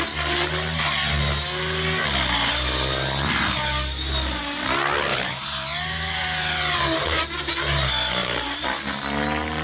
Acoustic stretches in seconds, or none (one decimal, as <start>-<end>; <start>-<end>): 0.0-5.1; 7.5-8.2; 8.8-9.6